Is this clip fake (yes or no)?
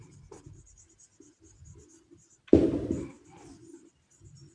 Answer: no